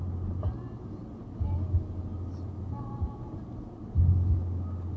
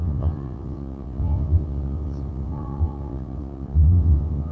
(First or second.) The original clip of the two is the first